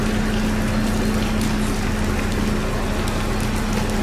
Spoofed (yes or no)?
no